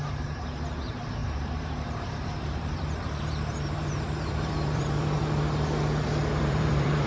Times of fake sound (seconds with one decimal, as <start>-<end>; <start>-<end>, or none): 0.0-5.2; 6.4-7.1